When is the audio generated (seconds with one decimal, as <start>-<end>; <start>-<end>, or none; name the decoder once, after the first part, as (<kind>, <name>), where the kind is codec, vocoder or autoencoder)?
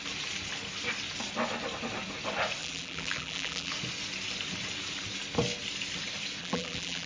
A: 2.6-3.7 (vocoder, BigVGAN v2); 6.4-7.1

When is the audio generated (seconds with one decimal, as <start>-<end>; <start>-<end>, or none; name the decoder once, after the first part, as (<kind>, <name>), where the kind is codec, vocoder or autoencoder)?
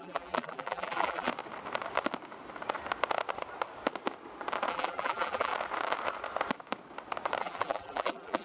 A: 0.0-1.3 (vocoder, BigVGAN v2); 4.7-5.5; 7.4-8.4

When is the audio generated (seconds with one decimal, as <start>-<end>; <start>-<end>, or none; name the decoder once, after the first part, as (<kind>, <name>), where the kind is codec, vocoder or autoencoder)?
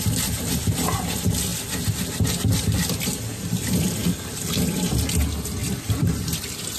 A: none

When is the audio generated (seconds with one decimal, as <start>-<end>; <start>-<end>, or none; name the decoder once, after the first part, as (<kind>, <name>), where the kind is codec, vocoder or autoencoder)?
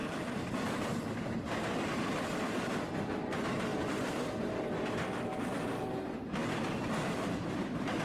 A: 3.7-5.8 (vocoder, BigVGAN v2)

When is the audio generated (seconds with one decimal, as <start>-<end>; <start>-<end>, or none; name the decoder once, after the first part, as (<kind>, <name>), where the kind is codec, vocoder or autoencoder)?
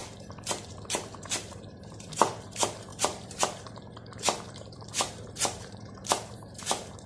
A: 1.2-7.1 (vocoder, BigVGAN v2)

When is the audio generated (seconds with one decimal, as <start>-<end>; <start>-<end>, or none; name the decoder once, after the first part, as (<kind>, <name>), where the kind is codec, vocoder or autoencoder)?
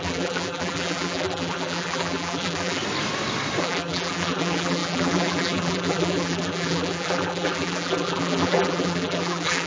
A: 0.0-2.8 (vocoder, BigVGAN v2); 3.6-9.7